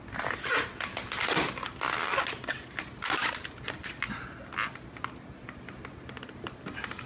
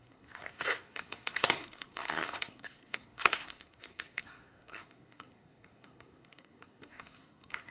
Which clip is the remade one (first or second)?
second